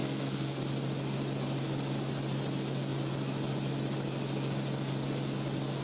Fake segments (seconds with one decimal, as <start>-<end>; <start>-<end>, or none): 0.0-0.6